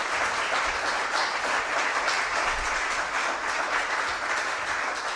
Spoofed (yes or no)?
no